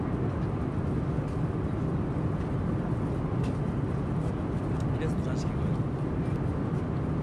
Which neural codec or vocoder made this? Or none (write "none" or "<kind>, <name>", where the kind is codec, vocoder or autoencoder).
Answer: none